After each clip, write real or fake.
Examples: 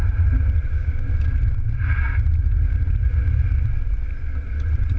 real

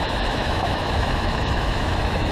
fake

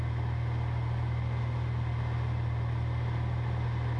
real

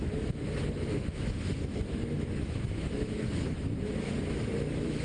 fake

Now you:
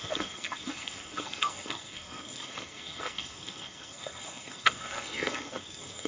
fake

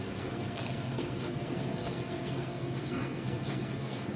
fake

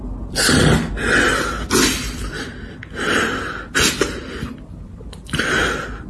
real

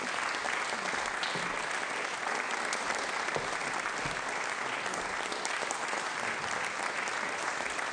real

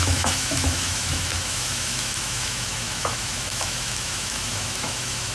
fake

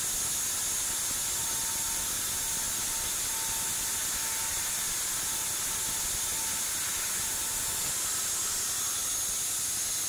real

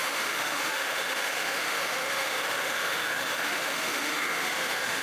fake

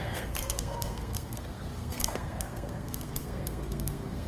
fake